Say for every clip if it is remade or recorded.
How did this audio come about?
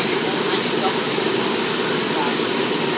recorded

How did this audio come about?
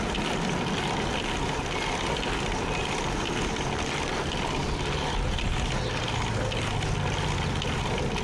recorded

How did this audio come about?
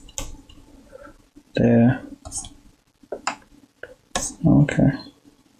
recorded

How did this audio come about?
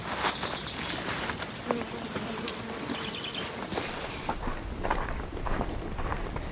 recorded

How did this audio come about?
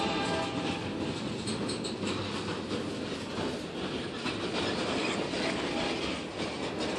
recorded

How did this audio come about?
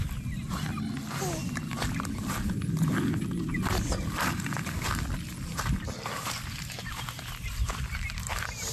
recorded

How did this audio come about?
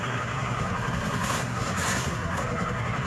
remade